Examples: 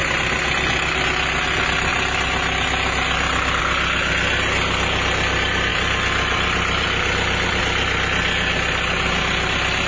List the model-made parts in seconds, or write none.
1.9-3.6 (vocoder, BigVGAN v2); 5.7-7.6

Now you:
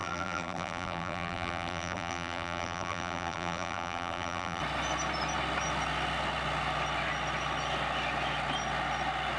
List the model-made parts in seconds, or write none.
0.0-4.6 (vocoder, BigVGAN v2)

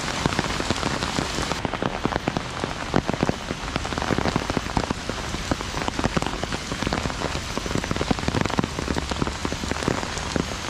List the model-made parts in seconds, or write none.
6.3-6.8 (codec, HILCodec)

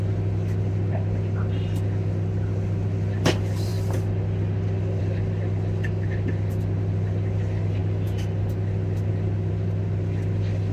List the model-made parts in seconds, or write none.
none

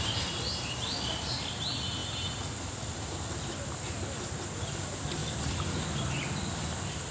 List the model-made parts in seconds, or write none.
5.2-5.7 (vocoder, BigVGAN v2)

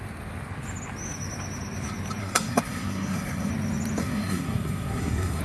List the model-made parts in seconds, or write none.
2.2-3.5 (codec, SNAC); 4.0-5.4

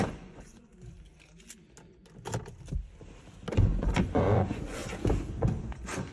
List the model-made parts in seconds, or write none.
0.0-0.7 (vocoder, Vocos); 3.5-4.8; 5.3-6.1

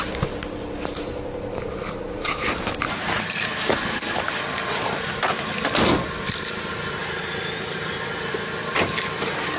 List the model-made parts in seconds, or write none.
7.0-7.9 (vocoder, BigVGAN v2)